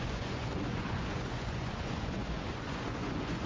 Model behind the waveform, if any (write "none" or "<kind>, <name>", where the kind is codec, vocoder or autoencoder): vocoder, Vocos